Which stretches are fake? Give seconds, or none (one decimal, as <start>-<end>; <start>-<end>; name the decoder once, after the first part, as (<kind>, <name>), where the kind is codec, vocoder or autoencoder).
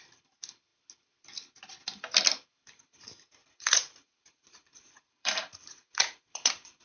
3.4-6.8 (vocoder, Vocos)